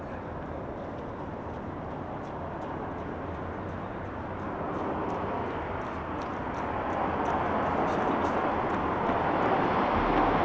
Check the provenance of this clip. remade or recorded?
recorded